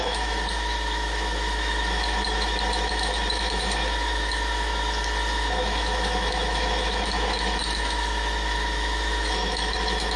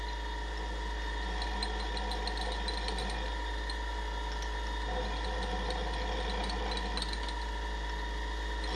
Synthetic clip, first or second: first